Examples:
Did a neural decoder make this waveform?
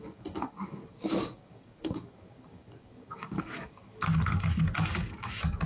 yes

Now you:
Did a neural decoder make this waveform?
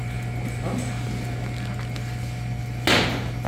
no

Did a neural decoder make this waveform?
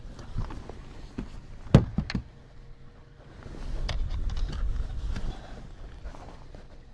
no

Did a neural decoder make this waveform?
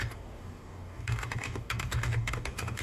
yes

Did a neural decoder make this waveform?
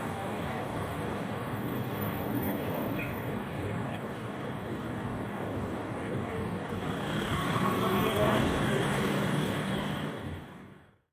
yes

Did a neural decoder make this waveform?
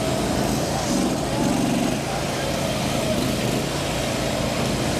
no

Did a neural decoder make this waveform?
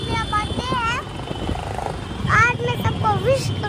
no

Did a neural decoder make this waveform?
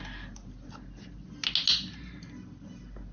no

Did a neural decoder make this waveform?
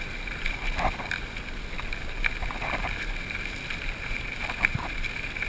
no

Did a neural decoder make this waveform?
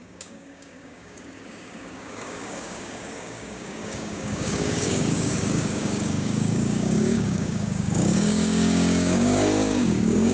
yes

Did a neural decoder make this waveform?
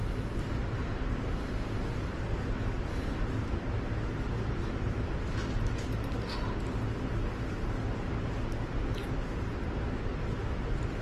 no